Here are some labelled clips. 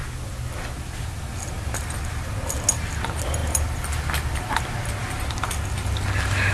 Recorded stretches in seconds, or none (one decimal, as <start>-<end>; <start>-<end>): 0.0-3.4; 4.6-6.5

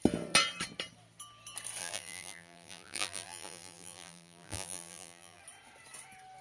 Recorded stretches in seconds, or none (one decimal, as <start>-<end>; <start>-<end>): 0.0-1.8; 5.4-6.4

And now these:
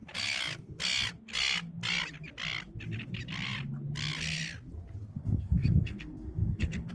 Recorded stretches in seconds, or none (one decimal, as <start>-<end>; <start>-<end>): 0.0-5.2

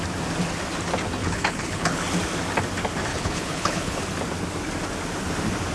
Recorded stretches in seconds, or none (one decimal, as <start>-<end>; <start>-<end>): 0.0-1.2; 2.0-3.1; 4.0-5.7

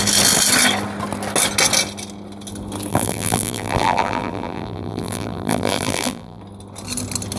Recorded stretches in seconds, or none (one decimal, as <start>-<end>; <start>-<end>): 0.0-2.9; 6.4-7.4